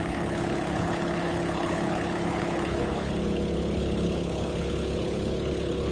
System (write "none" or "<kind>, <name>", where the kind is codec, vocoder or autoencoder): codec, HILCodec